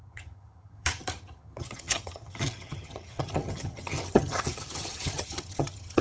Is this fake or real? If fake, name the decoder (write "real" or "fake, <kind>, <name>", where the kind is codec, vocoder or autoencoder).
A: fake, vocoder, HiFi-GAN